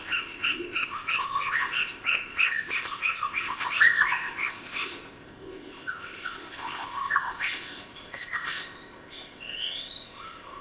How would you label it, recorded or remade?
remade